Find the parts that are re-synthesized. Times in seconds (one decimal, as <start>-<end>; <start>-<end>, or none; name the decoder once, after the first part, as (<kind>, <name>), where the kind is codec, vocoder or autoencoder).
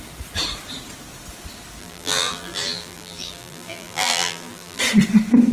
1.8-4.8 (vocoder, BigVGAN v2)